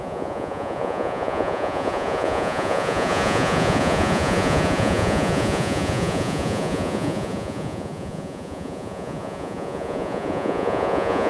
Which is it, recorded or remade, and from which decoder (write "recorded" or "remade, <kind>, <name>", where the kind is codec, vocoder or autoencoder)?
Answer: remade, vocoder, Vocos